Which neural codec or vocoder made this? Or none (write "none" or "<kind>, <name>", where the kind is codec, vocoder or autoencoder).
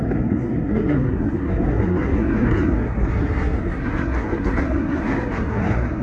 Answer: codec, SNAC